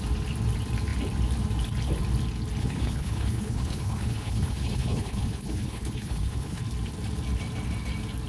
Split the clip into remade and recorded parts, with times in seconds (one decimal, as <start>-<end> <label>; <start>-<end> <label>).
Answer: 0.0-2.6 recorded; 2.6-6.6 remade; 6.6-8.3 recorded